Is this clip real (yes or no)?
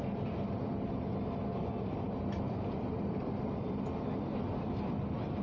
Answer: yes